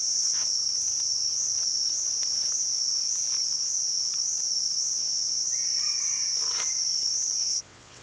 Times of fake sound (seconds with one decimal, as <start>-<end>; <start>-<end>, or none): 0.0-0.5; 4.8-5.4; 7.4-8.0